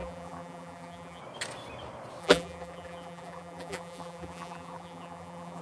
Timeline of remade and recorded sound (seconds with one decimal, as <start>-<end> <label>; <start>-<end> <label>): 0.0-1.2 remade; 1.2-2.2 recorded; 2.2-5.6 remade